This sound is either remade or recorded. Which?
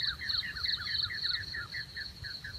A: recorded